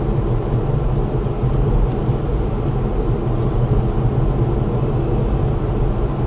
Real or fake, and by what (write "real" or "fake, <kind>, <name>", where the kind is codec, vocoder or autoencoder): real